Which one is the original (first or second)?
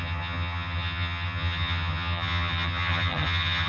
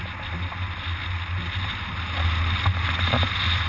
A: second